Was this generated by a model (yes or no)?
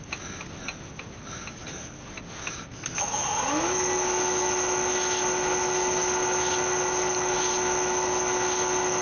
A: no